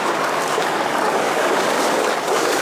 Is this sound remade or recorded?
remade